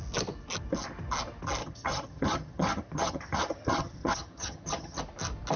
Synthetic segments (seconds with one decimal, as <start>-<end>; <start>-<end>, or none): 1.6-5.0